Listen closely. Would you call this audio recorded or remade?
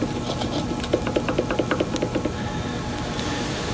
recorded